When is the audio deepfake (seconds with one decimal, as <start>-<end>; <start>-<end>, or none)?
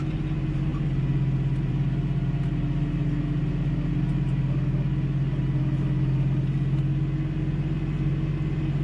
none